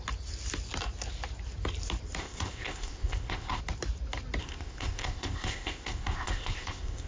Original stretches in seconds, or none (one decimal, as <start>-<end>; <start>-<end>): 0.0-2.2; 3.6-4.4